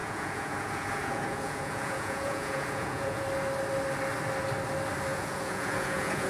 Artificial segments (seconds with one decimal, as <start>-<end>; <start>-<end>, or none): 0.0-3.2; 5.1-6.3